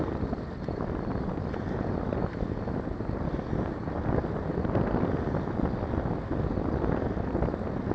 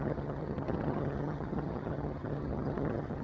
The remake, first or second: second